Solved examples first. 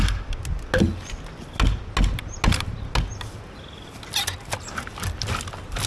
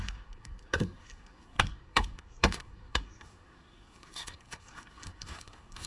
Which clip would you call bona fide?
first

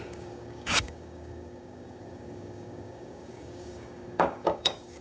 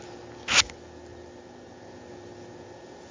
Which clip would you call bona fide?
second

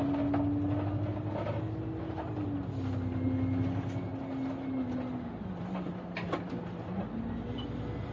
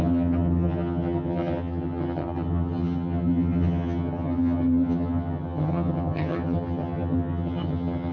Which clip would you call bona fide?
first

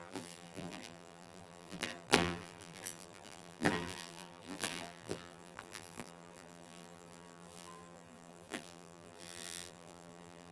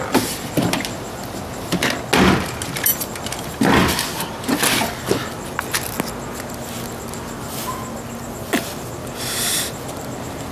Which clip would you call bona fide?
second